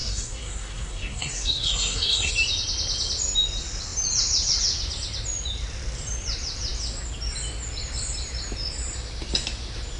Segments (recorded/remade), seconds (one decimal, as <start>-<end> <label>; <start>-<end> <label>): 0.0-2.3 remade; 2.3-10.0 recorded